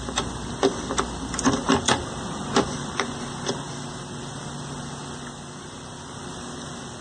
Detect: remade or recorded remade